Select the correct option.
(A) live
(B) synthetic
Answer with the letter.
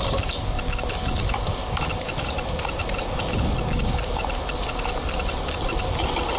A